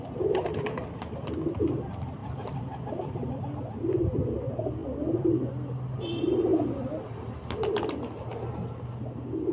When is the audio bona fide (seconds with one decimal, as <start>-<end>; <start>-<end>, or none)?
0.0-2.2; 3.4-4.8; 5.5-9.5